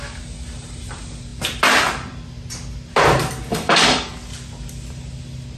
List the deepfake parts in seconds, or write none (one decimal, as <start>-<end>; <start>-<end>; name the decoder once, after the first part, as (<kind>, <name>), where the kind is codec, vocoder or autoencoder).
3.5-4.1 (codec, DAC)